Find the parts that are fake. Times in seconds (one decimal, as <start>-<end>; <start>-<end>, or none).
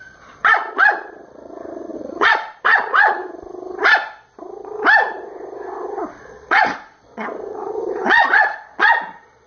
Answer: 0.0-3.2; 6.2-9.5